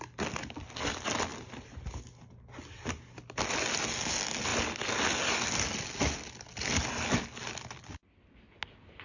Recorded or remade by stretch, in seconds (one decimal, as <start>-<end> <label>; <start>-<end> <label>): 0.0-9.0 recorded